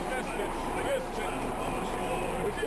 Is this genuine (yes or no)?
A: no